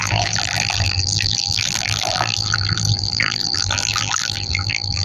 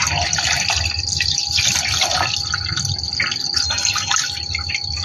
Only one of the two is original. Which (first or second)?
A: second